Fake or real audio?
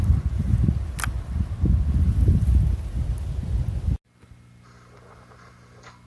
real